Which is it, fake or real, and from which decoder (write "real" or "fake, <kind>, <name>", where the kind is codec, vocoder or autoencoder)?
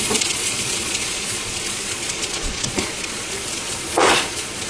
fake, vocoder, Vocos